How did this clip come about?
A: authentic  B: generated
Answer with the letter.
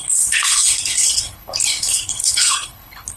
B